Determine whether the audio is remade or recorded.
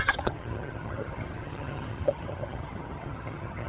remade